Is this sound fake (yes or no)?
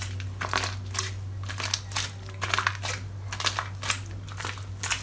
no